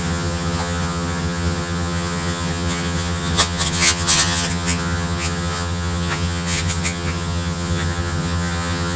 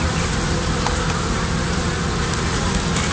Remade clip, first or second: first